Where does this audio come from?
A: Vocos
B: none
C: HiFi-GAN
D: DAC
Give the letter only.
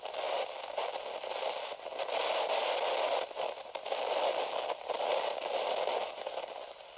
B